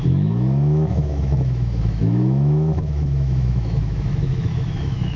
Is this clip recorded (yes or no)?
no